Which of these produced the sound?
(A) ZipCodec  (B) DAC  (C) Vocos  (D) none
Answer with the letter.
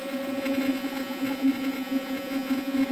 C